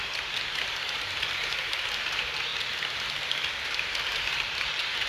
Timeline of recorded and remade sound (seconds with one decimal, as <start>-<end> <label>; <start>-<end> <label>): 0.0-2.5 remade; 2.5-3.1 recorded; 3.1-5.1 remade